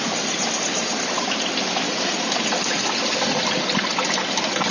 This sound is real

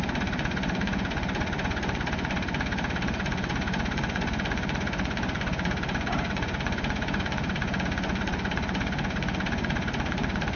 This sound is fake